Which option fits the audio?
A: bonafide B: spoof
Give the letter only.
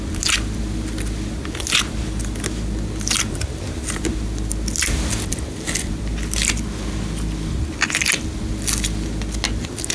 A